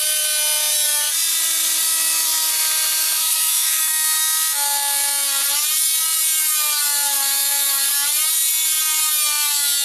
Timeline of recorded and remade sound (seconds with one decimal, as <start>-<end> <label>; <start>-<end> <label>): 0.0-3.0 recorded; 3.0-3.8 remade; 3.8-9.8 recorded